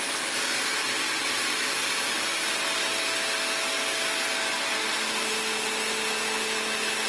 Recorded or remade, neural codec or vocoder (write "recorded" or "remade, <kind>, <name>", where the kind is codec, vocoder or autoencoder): recorded